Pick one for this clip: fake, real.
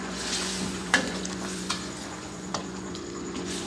fake